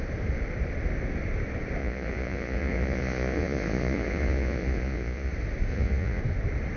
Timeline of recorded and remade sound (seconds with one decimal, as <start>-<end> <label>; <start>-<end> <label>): 0.0-1.8 recorded; 1.8-5.3 remade; 5.3-5.7 recorded; 5.7-6.2 remade; 6.2-6.8 recorded